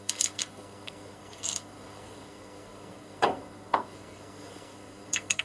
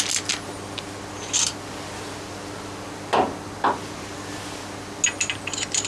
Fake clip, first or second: first